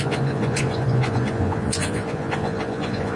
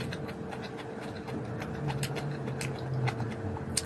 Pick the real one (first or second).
second